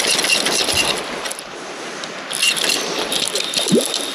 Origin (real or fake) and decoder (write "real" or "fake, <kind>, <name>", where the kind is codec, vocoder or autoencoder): real